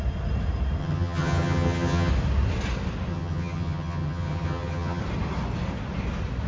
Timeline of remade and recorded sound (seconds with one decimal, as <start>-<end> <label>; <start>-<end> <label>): 0.0-0.8 recorded; 0.8-2.1 remade; 2.1-3.1 recorded; 3.1-5.0 remade; 5.0-6.5 recorded